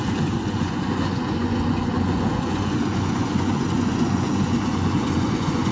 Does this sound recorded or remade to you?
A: remade